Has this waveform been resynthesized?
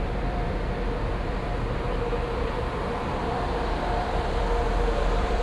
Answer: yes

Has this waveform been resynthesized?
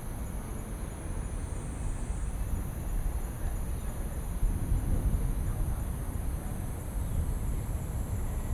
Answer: no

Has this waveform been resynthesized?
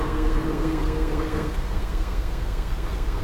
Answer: yes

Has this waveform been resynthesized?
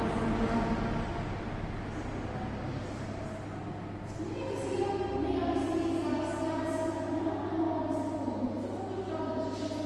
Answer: no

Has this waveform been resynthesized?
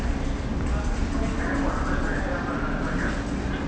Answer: no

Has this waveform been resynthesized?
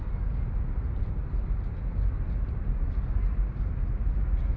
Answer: no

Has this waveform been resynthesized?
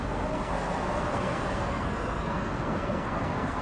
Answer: yes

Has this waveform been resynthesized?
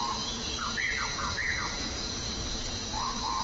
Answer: yes